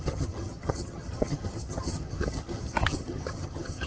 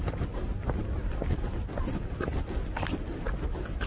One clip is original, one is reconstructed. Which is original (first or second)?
second